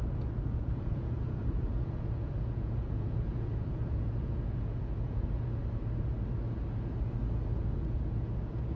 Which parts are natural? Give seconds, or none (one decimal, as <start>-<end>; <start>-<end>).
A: 5.6-7.6

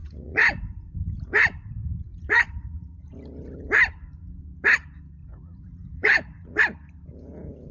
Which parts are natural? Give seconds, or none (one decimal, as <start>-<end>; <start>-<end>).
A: 0.9-2.1; 3.0-5.2; 6.6-7.7

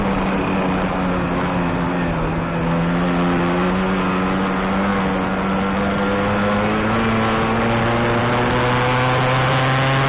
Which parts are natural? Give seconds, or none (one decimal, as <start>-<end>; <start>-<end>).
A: 0.0-10.1

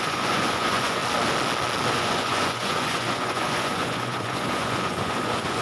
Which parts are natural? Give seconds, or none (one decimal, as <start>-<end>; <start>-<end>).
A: 1.0-1.9

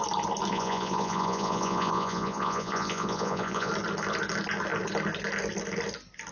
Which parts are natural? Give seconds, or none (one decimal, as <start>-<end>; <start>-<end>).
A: 0.0-0.5; 3.7-6.3

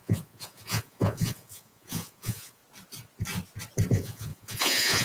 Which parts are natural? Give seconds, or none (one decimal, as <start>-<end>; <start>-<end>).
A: 2.6-3.9